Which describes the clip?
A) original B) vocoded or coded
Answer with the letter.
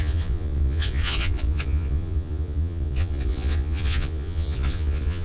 B